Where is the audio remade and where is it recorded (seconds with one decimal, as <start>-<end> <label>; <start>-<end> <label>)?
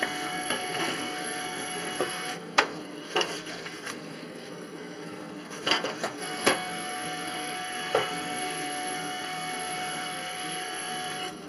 0.0-11.5 remade